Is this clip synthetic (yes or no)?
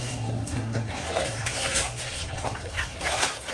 yes